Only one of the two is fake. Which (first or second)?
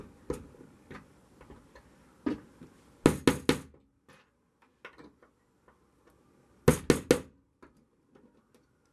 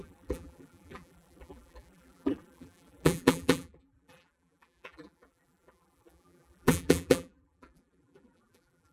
second